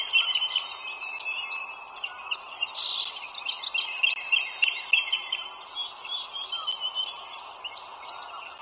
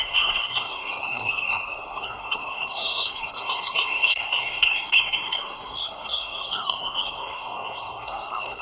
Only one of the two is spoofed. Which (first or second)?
second